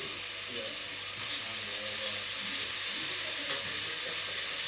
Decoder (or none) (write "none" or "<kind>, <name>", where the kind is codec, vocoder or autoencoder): none